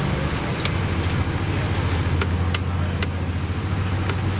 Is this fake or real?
real